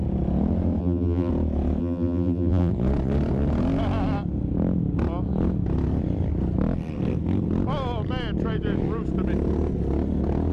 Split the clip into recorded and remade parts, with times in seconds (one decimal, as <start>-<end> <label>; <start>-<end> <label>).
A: 0.0-0.8 recorded; 0.8-1.3 remade; 1.3-1.8 recorded; 1.8-2.7 remade; 2.7-10.5 recorded